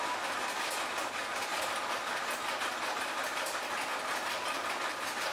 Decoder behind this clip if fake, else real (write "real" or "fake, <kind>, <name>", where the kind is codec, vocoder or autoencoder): real